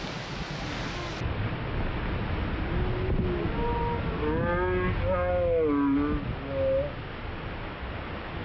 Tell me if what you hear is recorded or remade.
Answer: recorded